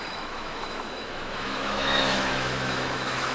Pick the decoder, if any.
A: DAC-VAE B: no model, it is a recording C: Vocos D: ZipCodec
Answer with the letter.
A